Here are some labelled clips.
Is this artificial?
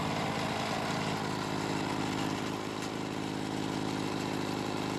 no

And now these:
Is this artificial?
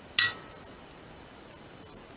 no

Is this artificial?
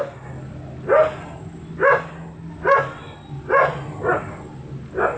no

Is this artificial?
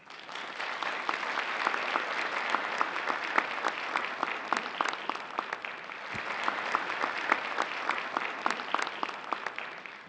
no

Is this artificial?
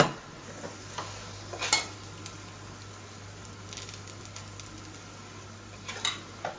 no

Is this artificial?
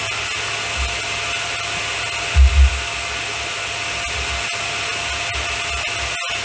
no